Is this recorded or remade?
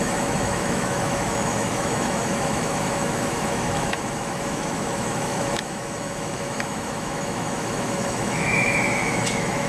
remade